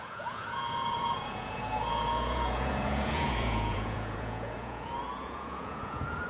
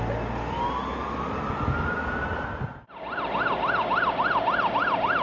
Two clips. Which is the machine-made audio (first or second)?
first